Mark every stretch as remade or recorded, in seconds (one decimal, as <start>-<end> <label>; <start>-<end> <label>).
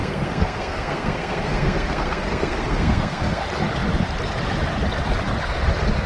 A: 0.0-3.4 remade; 3.4-6.1 recorded